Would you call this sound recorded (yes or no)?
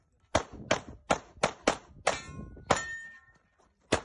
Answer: yes